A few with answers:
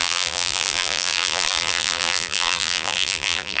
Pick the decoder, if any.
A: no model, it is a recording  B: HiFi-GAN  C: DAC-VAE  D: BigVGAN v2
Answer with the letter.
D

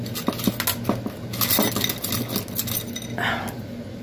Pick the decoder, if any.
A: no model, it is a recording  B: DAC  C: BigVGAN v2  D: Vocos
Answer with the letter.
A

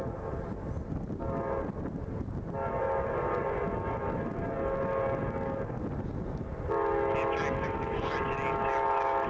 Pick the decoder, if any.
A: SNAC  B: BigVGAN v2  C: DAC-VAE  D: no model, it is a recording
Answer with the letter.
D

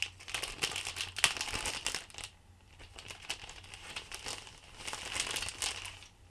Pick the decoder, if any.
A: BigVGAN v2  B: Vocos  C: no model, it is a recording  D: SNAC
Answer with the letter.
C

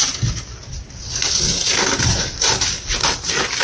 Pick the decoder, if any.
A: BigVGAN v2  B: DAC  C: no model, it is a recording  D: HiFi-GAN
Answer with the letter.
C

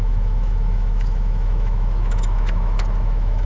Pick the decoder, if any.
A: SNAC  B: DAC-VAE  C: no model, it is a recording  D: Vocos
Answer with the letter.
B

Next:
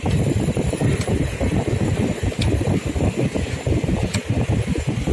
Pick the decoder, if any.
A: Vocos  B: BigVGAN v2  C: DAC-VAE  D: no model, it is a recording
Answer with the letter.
D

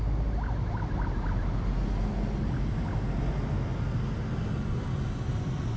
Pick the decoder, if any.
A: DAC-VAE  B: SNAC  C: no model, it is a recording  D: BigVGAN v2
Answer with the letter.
C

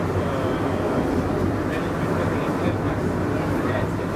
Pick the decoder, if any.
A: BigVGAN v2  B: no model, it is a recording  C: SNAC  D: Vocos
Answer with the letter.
B